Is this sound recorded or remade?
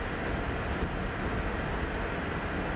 recorded